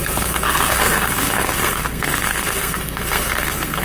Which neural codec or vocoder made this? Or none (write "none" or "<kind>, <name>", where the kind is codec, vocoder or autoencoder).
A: codec, SNAC